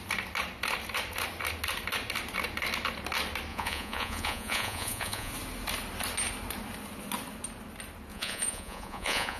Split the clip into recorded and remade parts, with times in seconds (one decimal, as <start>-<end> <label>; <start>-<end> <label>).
0.0-3.5 recorded; 3.5-5.3 remade; 5.3-8.1 recorded; 8.1-9.4 remade